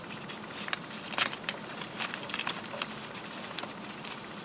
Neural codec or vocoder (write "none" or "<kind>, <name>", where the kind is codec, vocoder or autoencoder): none